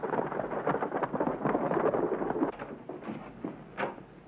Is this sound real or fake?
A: real